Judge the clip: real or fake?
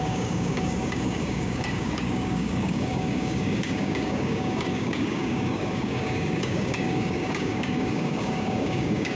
fake